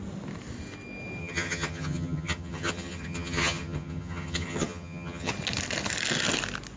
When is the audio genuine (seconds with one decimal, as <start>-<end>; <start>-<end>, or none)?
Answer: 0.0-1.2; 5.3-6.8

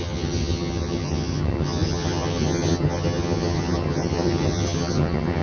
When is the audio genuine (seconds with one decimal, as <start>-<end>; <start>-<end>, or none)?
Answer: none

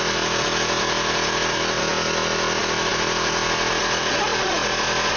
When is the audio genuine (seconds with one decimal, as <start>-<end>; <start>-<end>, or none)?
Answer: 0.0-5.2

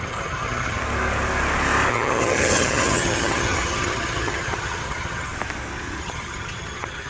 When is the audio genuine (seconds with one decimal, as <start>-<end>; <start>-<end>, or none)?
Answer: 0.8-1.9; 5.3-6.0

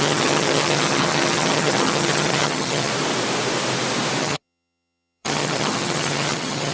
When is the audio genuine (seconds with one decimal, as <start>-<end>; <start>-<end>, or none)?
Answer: 2.9-4.2